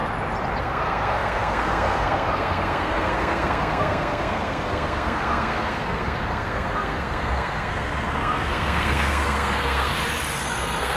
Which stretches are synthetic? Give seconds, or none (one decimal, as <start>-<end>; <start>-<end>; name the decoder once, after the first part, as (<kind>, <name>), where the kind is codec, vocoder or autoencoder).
0.6-9.9 (codec, SNAC); 10.4-11.0